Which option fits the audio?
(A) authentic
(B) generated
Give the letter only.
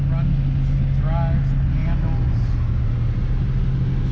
A